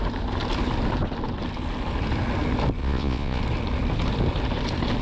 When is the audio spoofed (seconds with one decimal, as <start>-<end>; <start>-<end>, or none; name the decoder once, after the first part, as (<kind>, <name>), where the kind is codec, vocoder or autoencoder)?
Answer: 2.8-3.4 (vocoder, Vocos)